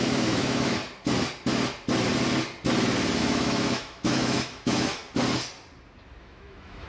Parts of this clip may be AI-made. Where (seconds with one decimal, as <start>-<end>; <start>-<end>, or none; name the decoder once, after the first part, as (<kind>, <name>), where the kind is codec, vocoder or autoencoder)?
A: 0.0-0.8 (autoencoder, DAC-VAE); 3.2-5.0; 6.2-6.9